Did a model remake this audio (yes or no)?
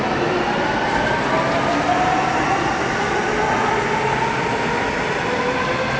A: no